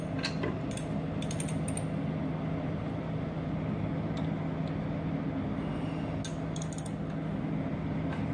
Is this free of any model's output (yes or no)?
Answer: yes